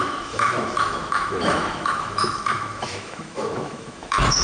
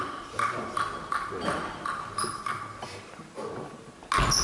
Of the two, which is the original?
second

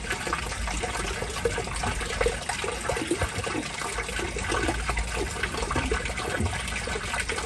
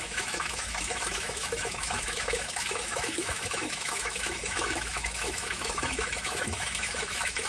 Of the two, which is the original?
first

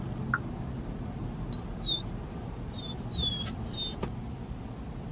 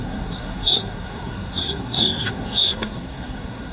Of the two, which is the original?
first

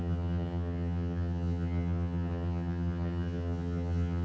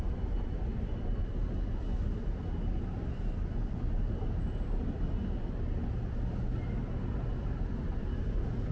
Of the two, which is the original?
second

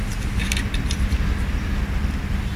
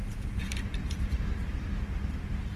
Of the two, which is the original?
first